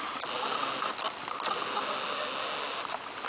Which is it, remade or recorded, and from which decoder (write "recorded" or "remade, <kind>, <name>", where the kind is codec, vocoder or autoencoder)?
recorded